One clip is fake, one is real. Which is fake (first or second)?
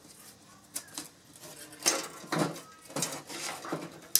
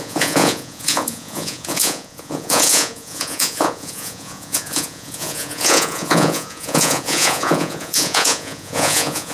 second